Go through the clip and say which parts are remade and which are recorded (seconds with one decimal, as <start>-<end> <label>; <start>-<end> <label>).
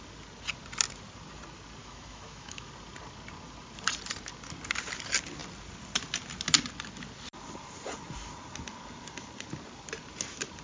0.0-1.8 recorded; 1.8-2.7 remade; 2.7-10.6 recorded